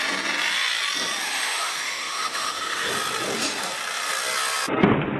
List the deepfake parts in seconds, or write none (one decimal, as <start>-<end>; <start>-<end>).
1.2-2.9